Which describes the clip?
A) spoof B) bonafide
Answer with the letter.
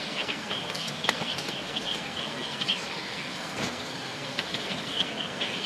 A